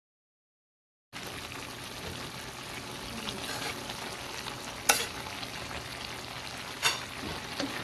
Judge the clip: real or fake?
real